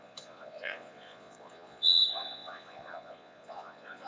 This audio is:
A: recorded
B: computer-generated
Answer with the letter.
B